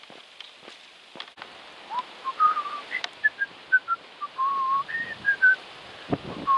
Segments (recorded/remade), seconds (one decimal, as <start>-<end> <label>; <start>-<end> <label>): 0.0-6.6 recorded